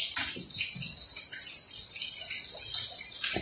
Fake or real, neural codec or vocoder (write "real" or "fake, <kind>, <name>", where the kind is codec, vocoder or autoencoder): real